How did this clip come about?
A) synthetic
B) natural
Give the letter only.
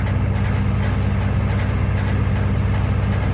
B